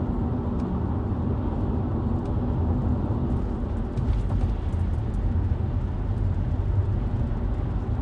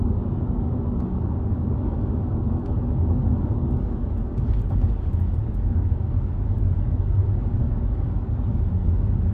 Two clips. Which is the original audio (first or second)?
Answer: first